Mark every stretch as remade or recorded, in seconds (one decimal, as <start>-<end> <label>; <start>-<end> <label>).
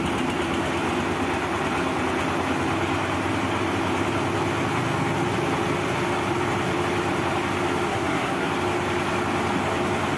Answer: 0.0-7.9 recorded; 7.9-8.5 remade; 8.5-10.2 recorded